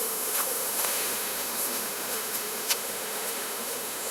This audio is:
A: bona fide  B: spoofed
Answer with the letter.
B